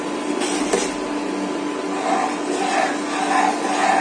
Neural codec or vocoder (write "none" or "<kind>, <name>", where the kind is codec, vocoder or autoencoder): none